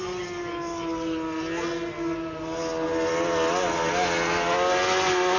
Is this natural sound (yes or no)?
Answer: yes